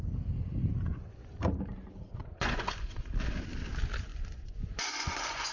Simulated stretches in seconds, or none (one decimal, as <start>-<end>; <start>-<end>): 0.9-1.4; 2.2-3.0; 4.1-5.5